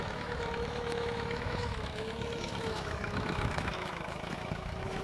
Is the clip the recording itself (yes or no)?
no